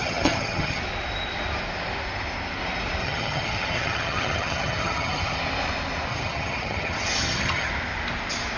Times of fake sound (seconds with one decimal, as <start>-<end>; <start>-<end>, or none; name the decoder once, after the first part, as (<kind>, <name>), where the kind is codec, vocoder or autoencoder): 0.0-0.8 (vocoder, HiFi-GAN); 3.0-5.4; 6.1-7.7